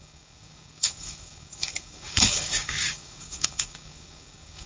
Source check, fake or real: fake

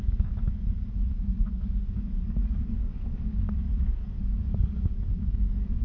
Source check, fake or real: fake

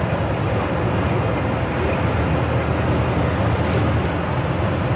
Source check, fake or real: real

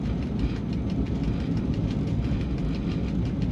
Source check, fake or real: real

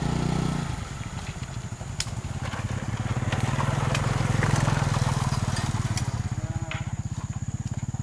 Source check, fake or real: real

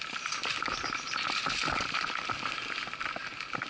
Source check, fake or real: real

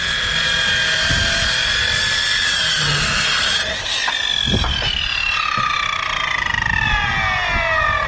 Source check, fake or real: real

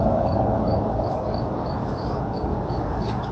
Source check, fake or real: fake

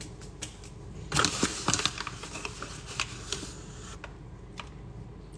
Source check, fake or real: real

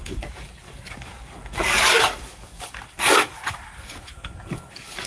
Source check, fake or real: fake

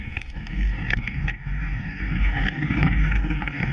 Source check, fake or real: fake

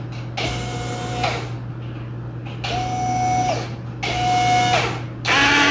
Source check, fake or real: real